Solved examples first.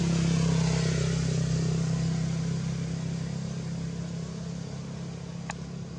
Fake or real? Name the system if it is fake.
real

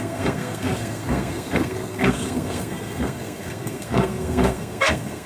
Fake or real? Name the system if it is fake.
fake, codec, SNAC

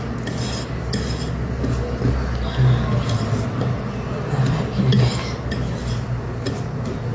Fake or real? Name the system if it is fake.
real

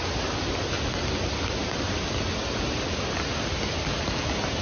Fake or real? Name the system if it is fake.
real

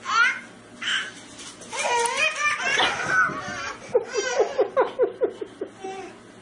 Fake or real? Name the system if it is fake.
real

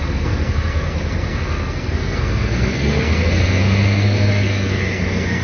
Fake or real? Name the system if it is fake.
fake, codec, SNAC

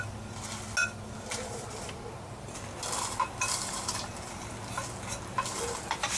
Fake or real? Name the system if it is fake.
real